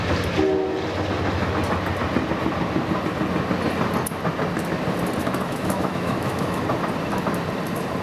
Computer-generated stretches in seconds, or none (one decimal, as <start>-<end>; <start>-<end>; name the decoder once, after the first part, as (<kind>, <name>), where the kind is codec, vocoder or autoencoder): 5.2-6.6 (autoencoder, DAC-VAE)